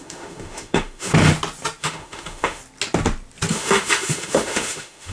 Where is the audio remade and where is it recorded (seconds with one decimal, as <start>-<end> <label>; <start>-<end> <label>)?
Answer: 0.0-1.3 remade; 1.3-1.8 recorded; 1.8-2.6 remade; 2.6-3.5 recorded; 3.5-5.1 remade